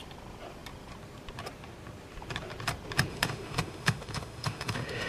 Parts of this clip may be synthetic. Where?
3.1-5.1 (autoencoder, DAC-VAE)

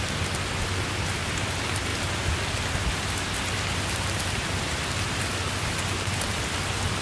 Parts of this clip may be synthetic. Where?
none

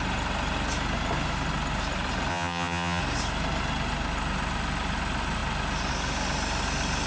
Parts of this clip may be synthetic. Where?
2.3-3.0 (vocoder, HiFi-GAN)

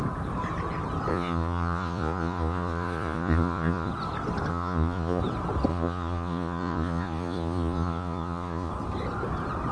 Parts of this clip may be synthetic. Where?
1.1-3.9 (vocoder, Vocos); 4.5-5.2; 5.7-8.7

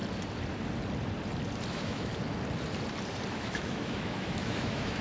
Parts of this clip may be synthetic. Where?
1.7-2.1 (autoencoder, DAC-VAE); 3.3-5.0

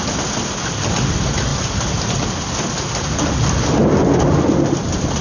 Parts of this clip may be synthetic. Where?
none